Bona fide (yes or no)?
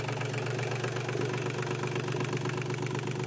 yes